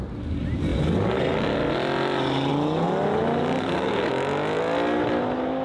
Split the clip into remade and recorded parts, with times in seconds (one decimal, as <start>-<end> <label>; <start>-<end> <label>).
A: 0.0-3.6 recorded; 3.6-4.1 remade; 4.1-5.6 recorded